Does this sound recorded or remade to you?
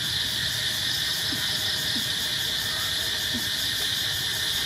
remade